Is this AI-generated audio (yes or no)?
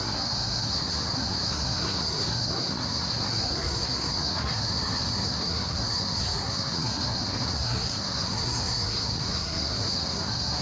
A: yes